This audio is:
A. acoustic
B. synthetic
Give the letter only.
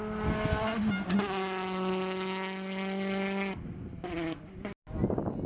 A